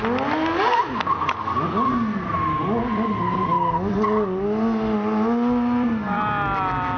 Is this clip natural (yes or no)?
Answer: yes